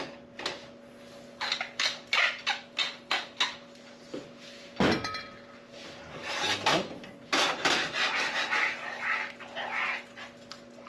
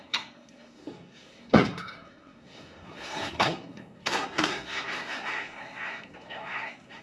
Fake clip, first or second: second